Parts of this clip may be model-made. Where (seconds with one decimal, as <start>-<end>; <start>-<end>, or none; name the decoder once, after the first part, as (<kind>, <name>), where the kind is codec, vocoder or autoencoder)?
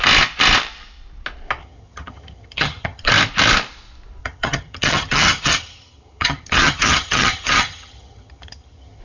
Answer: 1.6-3.1 (vocoder, HiFi-GAN); 4.2-9.0